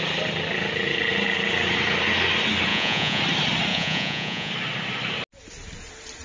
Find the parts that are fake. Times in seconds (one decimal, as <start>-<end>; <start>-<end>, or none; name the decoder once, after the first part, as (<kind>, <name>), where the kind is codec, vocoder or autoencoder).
2.7-3.2 (vocoder, Vocos); 3.7-4.5